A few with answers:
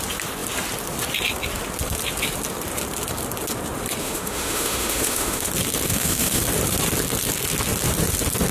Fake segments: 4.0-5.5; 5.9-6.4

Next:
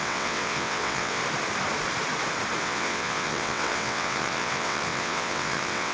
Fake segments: 0.0-1.2; 2.6-5.9

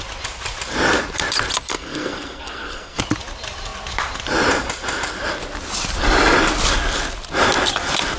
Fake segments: 1.7-3.0

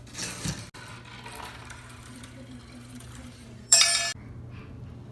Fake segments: 1.6-3.8

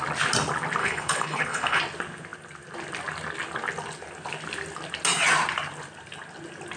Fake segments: 0.8-1.8

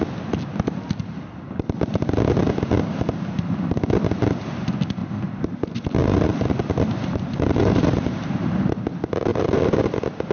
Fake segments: 5.0-8.6; 9.3-9.9